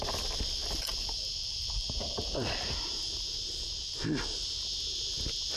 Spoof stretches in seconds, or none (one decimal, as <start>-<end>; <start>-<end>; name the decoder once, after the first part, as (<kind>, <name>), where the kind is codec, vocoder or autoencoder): 0.9-3.7 (vocoder, BigVGAN v2)